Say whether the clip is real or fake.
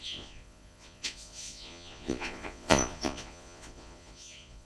fake